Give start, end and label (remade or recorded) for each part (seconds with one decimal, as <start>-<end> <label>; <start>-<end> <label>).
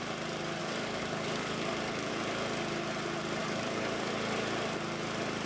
0.0-0.6 recorded; 0.6-2.1 remade; 2.1-3.4 recorded; 3.4-4.1 remade; 4.1-5.5 recorded